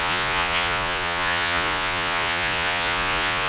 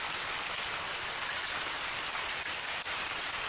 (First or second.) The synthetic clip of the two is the first